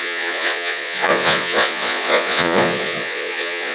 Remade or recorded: remade